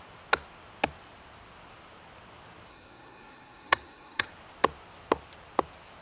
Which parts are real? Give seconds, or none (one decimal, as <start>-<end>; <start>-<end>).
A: 0.0-2.7; 4.3-6.0